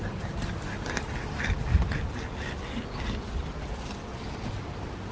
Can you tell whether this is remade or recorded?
recorded